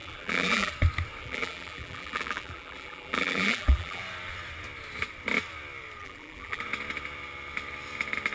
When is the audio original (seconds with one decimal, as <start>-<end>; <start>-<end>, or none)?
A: 0.7-1.2; 4.0-6.0; 6.6-8.3